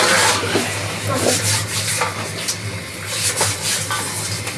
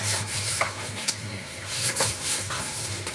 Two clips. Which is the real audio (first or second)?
first